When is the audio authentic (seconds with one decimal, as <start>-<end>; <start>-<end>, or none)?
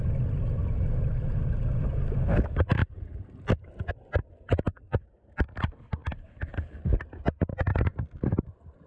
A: 0.0-8.9